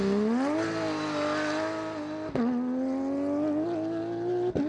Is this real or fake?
real